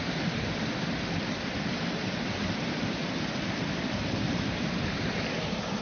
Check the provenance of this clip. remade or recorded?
recorded